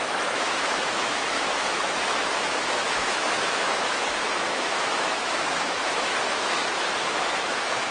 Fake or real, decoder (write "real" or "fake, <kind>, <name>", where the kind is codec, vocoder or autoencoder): fake, autoencoder, DAC-VAE